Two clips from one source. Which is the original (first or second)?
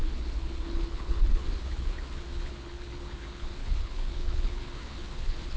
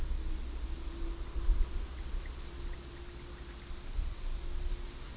second